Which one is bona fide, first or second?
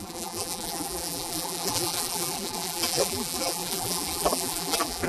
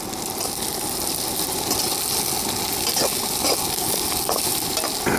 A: second